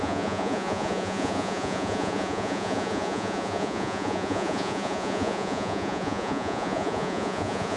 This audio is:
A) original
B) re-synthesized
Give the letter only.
B